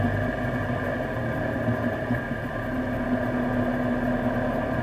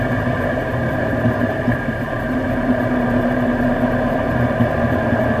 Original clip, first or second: first